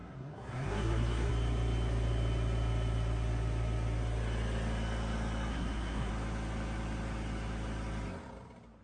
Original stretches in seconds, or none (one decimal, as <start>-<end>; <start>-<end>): 1.3-5.5; 6.1-8.8